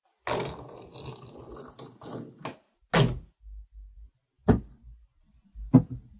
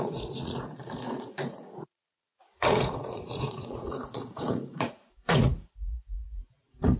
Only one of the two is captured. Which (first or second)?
first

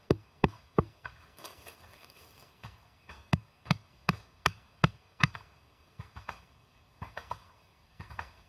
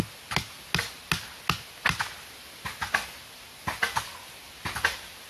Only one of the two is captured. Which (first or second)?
second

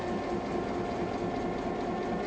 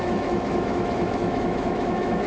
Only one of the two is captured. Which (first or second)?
first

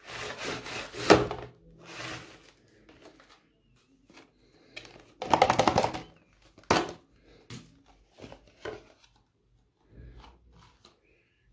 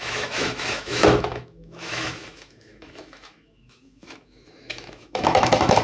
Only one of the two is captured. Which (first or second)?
first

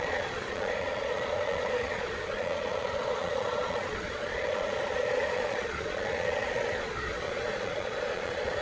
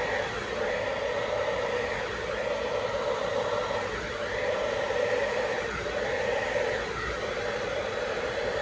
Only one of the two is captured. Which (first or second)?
second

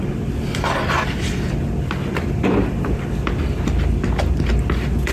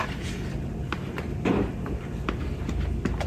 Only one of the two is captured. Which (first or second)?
first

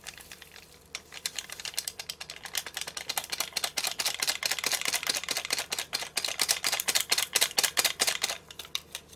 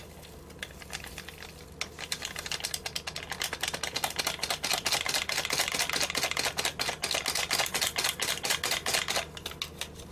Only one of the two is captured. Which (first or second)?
second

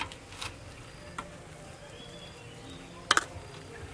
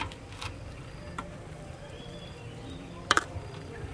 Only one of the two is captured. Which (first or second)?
first